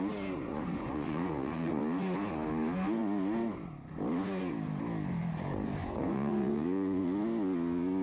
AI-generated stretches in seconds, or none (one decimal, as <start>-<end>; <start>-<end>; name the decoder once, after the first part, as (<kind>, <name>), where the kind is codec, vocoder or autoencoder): 0.5-1.8 (vocoder, Vocos); 5.8-7.0